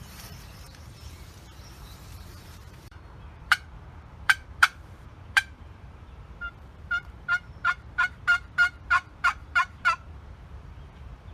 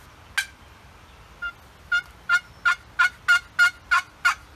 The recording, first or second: second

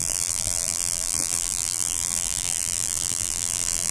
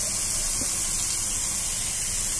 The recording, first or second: second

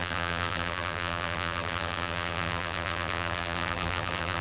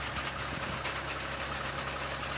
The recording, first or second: second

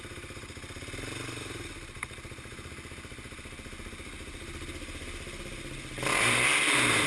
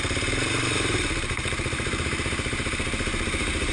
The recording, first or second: first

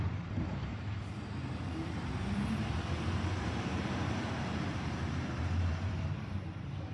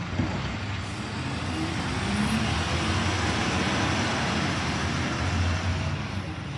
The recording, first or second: second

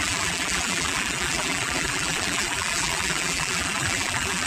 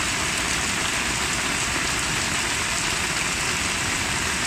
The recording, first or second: second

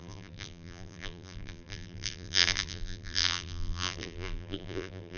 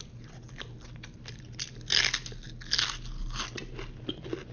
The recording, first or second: second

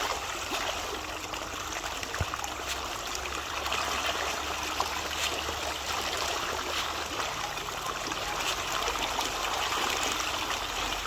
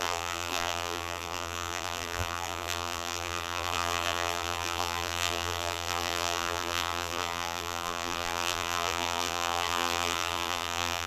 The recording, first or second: first